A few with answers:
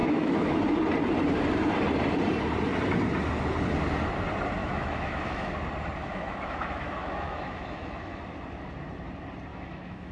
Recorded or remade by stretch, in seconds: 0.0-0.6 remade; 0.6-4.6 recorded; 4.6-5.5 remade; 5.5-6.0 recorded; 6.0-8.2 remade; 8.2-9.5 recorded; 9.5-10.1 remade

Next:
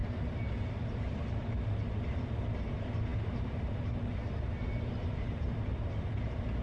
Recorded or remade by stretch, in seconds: 0.0-6.6 recorded

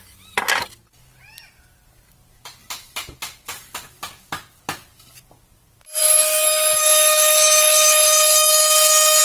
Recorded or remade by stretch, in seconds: 0.0-6.0 recorded; 6.0-9.2 remade

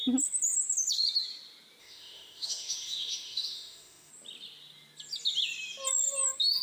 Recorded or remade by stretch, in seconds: 0.0-1.8 recorded; 1.8-4.1 remade; 4.1-6.6 recorded